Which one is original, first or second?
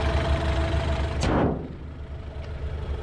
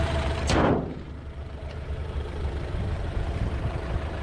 first